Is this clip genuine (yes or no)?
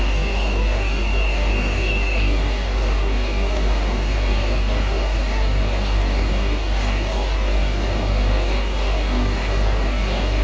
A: no